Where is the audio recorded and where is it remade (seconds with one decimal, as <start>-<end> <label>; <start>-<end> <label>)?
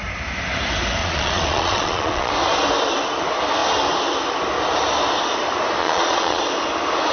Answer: 0.0-1.0 recorded; 1.0-2.3 remade; 2.3-5.8 recorded; 5.8-6.4 remade; 6.4-7.1 recorded